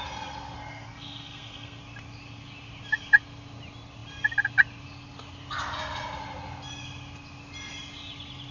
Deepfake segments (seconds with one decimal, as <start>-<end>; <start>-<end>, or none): 0.6-1.8